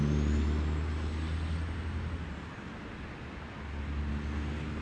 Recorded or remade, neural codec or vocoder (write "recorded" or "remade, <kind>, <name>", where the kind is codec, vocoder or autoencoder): recorded